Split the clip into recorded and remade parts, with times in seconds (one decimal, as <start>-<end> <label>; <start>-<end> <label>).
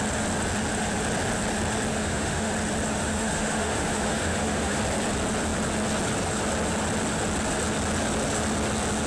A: 0.0-1.9 recorded; 1.9-2.5 remade; 2.5-2.9 recorded; 2.9-4.8 remade; 4.8-9.1 recorded